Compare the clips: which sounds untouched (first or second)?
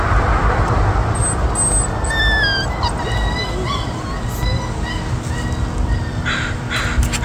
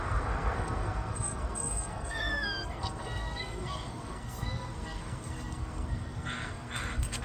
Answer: first